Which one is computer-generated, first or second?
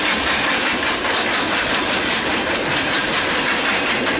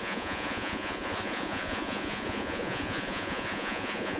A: second